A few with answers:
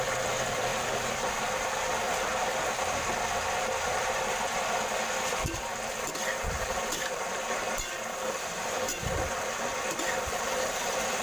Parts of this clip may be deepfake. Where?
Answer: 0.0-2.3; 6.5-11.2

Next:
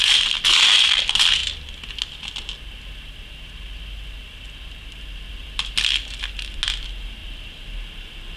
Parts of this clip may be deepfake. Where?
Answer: 7.2-7.7

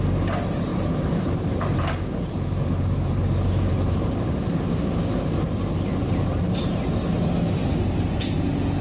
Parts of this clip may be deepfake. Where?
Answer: 0.7-4.4; 6.3-6.9

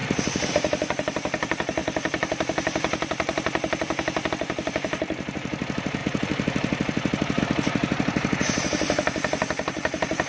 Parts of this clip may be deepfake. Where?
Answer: 0.5-10.3

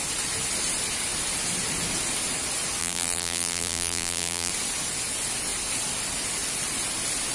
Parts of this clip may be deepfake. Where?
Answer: 2.8-4.5

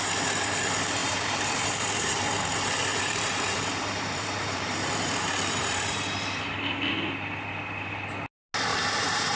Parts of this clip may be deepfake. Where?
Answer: 1.0-2.3; 2.9-6.3; 8.7-9.4